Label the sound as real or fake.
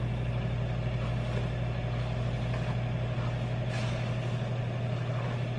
real